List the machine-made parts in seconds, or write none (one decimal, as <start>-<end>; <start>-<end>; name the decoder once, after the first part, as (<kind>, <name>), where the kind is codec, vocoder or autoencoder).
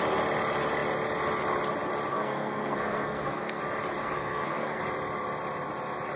2.1-3.6 (codec, SNAC); 4.0-4.8